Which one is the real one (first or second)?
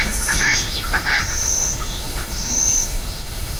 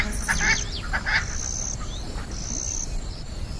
second